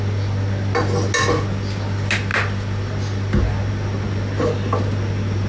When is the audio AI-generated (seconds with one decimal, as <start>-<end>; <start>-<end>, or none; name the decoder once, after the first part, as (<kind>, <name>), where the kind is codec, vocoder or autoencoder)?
none

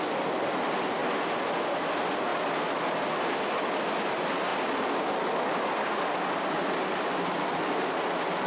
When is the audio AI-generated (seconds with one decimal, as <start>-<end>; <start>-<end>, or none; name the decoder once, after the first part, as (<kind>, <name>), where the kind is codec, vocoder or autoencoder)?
none

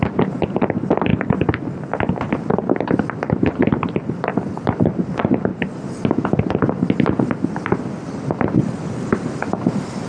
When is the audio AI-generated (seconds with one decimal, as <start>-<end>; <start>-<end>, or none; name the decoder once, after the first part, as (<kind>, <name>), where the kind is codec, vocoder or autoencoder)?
0.0-1.1 (vocoder, BigVGAN v2); 2.1-5.5; 6.3-10.1